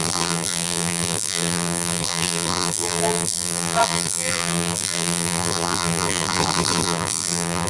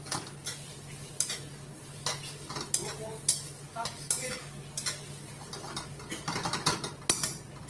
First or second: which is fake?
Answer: first